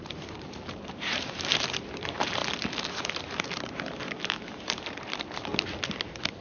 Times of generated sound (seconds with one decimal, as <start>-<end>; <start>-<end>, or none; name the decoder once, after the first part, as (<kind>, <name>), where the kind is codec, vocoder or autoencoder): 0.0-2.4 (vocoder, BigVGAN v2); 3.0-5.5